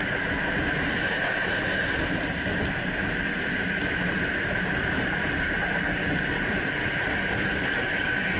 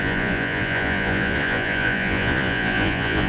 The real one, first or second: first